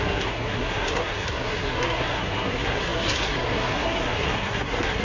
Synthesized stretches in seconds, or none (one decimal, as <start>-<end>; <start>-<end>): 0.0-5.0